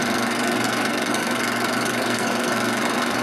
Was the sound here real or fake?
fake